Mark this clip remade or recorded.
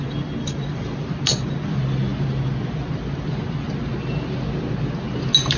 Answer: recorded